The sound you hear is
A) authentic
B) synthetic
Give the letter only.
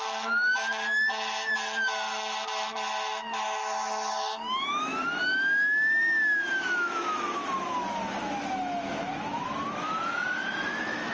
B